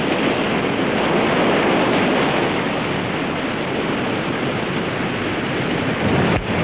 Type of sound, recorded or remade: recorded